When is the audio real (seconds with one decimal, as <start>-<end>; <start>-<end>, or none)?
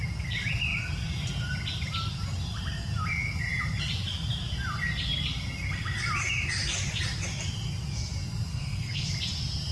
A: 0.0-8.5; 9.1-9.7